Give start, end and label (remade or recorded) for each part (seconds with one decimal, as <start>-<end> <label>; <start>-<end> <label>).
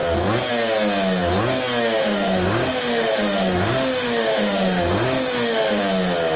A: 0.0-2.0 recorded; 2.0-5.8 remade; 5.8-6.4 recorded